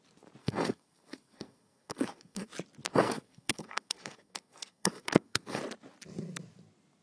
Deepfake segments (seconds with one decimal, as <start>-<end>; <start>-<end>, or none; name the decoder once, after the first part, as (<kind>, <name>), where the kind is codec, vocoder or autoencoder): 0.4-2.5 (codec, SNAC); 2.9-5.6